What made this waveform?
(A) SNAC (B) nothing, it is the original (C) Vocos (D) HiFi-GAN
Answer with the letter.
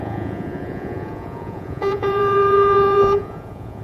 C